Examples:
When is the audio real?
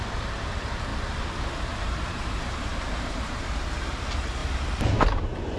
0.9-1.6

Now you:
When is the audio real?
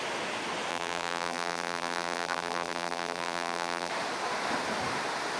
0.0-0.7; 3.9-5.4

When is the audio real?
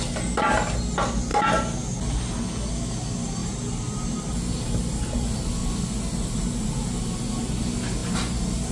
0.0-3.4; 4.3-8.7